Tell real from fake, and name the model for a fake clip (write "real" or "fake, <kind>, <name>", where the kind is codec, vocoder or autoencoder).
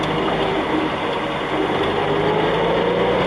real